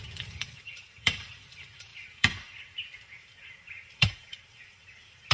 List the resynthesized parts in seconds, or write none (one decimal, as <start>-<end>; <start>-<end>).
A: 0.0-5.3